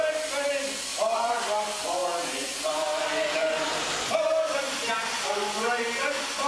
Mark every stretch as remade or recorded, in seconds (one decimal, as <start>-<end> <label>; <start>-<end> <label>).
0.0-0.9 recorded; 0.9-1.5 remade; 1.5-3.4 recorded; 3.4-4.7 remade; 4.7-6.5 recorded